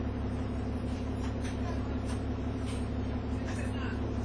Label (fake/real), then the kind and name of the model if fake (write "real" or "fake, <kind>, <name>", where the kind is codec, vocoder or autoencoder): fake, vocoder, BigVGAN v2